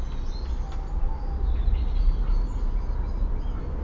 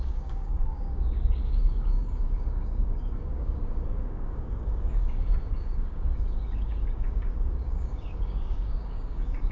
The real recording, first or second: first